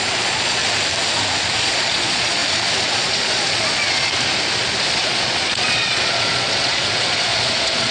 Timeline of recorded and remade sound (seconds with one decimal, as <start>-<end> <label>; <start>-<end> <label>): 0.0-0.6 remade; 0.6-1.6 recorded; 1.6-2.4 remade; 2.4-3.0 recorded; 3.0-4.1 remade; 4.1-4.8 recorded; 4.8-7.9 remade